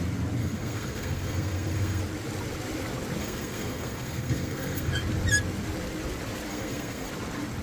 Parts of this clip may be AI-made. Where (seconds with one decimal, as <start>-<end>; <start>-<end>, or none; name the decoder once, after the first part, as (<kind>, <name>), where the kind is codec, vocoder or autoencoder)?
0.4-2.0 (codec, SNAC); 3.2-4.9; 6.5-7.1